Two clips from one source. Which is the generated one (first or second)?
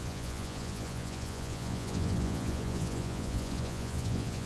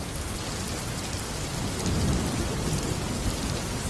first